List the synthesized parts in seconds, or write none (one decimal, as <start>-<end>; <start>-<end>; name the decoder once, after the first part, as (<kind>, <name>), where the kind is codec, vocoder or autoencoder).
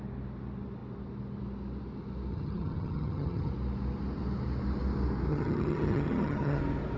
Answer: 2.3-3.5 (vocoder, HiFi-GAN); 5.3-6.6